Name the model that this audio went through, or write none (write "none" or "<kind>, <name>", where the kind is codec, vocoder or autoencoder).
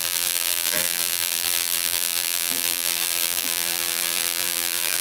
vocoder, BigVGAN v2